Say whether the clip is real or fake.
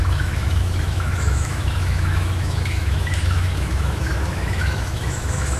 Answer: fake